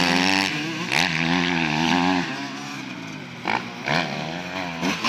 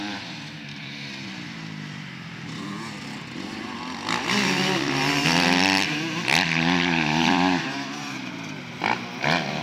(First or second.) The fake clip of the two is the second